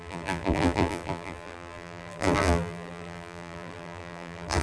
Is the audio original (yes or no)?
no